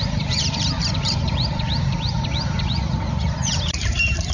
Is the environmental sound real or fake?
fake